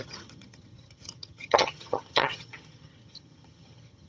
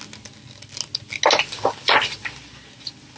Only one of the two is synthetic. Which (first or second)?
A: first